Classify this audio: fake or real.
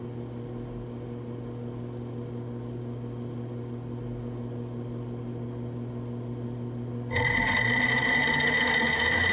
real